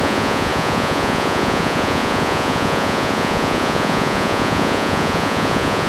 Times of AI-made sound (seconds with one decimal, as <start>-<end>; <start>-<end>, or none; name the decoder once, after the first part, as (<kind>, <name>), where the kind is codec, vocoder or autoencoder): 0.0-5.9 (vocoder, Vocos)